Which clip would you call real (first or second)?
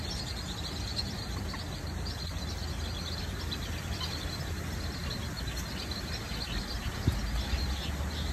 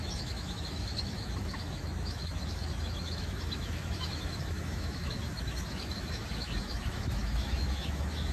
first